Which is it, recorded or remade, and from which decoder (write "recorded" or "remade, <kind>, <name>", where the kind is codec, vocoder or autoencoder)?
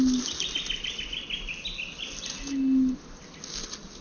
recorded